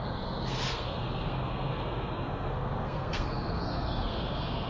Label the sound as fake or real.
fake